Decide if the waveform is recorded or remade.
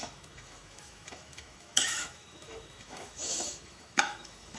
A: remade